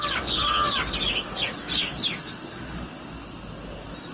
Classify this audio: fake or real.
real